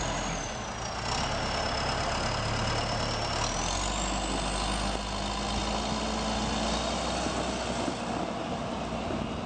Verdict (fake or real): real